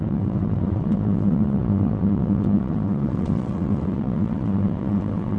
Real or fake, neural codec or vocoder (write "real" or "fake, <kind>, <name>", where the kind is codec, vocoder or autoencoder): fake, vocoder, WaveNeXt